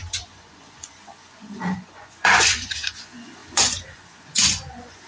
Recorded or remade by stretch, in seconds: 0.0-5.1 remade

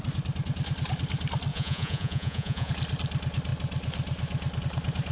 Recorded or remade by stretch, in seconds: 0.0-1.5 recorded; 1.5-2.7 remade; 2.7-5.1 recorded

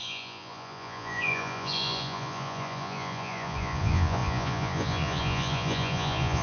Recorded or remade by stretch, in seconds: 0.0-6.4 remade

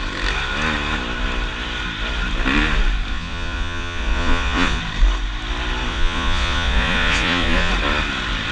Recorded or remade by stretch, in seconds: 0.0-3.1 recorded; 3.1-4.8 remade; 4.8-5.9 recorded; 5.9-7.7 remade; 7.7-8.5 recorded

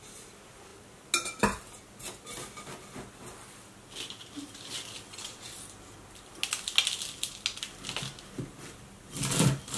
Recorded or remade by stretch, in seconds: 0.0-9.8 recorded

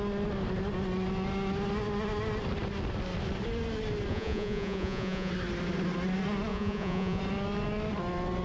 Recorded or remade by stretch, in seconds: 0.0-4.1 recorded; 4.1-5.3 remade; 5.3-6.5 recorded; 6.5-7.2 remade; 7.2-8.4 recorded